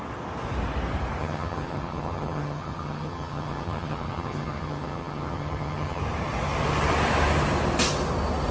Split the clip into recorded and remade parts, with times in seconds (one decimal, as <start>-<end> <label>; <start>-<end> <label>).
0.0-1.2 recorded; 1.2-6.0 remade; 6.0-8.5 recorded